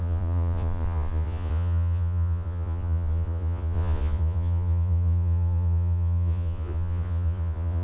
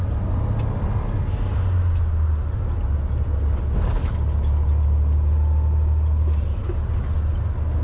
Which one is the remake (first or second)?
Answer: first